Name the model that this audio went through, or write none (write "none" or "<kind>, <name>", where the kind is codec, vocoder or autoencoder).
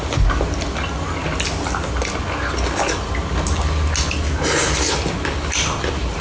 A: none